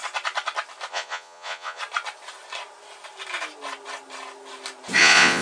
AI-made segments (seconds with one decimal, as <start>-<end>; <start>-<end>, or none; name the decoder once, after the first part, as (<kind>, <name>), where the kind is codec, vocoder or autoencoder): 0.9-1.8 (vocoder, Vocos); 5.0-5.4